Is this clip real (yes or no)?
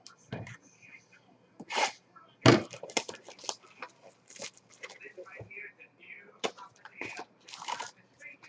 yes